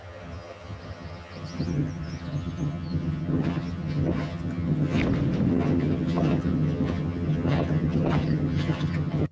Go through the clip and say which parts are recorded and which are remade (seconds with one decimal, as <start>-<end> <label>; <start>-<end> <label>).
0.0-5.0 remade; 5.0-5.5 recorded; 5.5-9.3 remade